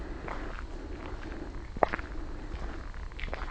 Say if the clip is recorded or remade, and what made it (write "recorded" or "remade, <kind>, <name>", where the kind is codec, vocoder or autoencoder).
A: recorded